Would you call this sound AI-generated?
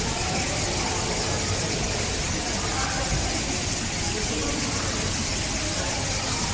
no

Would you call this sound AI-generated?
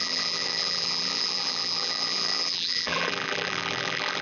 yes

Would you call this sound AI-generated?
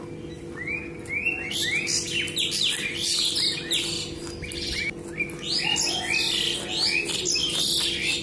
no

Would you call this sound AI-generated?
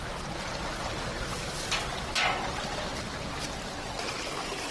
no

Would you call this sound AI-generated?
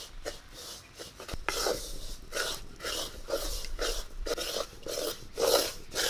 no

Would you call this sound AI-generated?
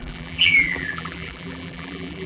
yes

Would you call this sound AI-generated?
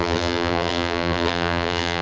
yes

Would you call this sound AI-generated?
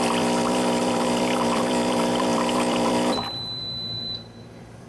yes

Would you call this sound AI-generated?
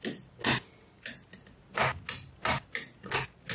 no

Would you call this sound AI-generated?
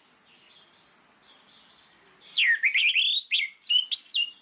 no